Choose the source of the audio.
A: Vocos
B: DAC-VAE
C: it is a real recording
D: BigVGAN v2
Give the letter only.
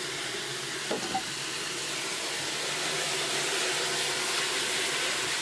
C